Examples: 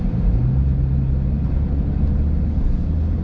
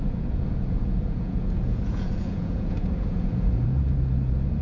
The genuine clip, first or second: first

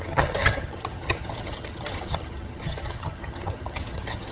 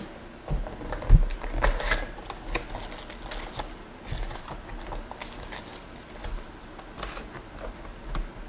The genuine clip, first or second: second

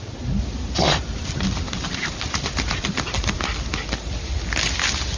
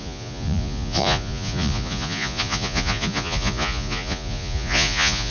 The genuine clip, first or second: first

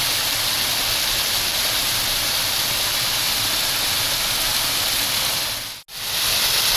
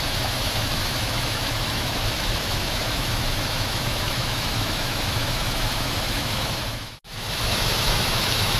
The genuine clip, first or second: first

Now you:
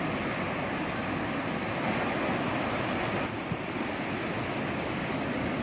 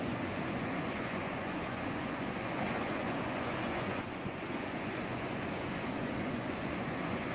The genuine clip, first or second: first